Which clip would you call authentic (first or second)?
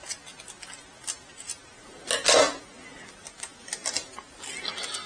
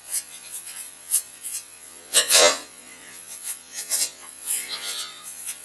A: first